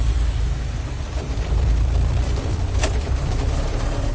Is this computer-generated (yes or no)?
yes